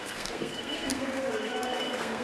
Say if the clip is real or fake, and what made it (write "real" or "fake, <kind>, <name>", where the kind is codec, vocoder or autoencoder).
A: fake, codec, SNAC